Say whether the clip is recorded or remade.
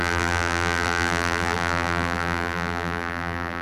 remade